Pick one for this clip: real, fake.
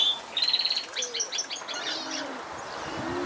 real